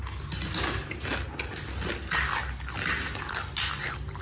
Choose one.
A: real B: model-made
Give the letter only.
A